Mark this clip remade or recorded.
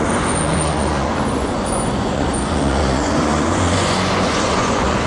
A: remade